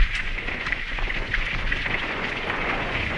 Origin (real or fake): fake